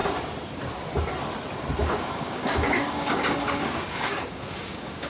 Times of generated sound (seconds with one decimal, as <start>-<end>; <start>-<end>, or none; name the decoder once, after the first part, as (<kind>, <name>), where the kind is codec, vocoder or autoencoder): 1.8-5.1 (codec, DAC)